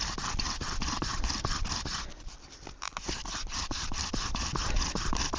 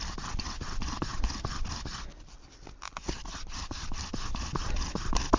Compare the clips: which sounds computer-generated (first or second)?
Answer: first